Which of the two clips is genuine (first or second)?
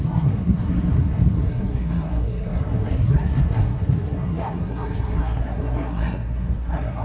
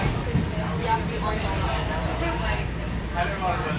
second